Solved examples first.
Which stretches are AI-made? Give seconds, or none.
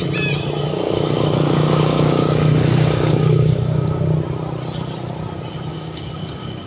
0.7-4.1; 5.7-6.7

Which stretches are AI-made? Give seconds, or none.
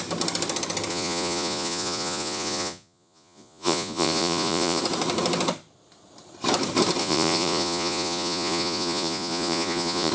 0.9-4.8; 7.0-10.1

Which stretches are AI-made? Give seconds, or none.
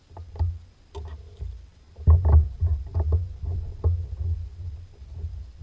none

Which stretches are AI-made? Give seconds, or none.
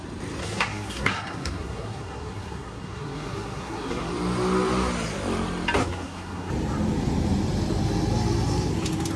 0.4-4.1; 5.8-6.5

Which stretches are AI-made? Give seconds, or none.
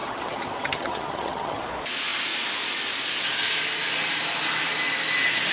0.0-1.6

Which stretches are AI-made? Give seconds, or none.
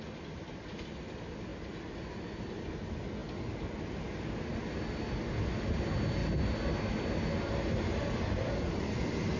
none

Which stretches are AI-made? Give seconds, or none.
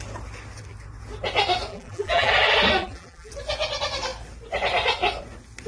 1.7-2.3; 2.8-3.3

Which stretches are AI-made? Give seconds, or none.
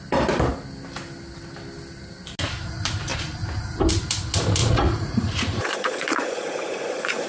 4.6-7.3